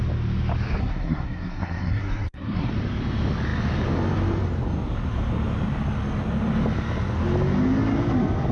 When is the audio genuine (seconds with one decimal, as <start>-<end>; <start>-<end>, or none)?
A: 0.0-0.8; 2.7-8.5